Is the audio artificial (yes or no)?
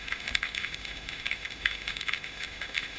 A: yes